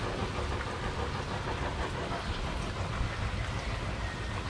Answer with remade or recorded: recorded